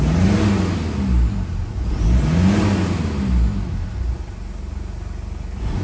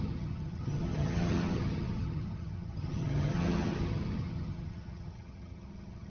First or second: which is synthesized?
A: second